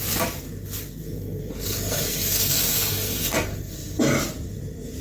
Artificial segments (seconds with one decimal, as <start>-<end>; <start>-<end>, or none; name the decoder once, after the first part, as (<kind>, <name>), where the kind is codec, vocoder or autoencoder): 1.0-4.0 (codec, SNAC)